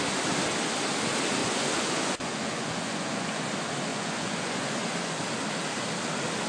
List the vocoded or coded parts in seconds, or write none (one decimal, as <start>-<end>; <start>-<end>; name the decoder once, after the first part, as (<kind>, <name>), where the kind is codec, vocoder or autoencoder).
1.4-3.4 (vocoder, Vocos); 3.9-5.2